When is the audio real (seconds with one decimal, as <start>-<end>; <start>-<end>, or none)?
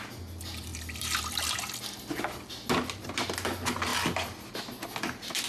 0.0-5.5